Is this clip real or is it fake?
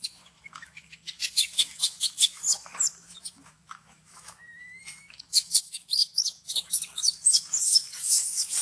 fake